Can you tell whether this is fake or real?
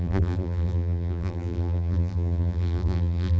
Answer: fake